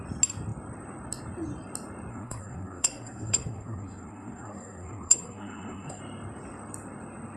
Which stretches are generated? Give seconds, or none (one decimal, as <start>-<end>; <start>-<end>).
2.1-6.0